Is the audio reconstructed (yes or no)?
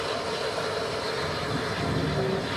no